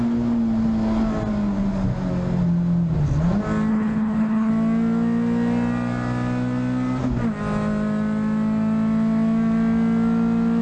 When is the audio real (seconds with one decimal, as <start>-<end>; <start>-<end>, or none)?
0.0-3.7; 4.5-10.6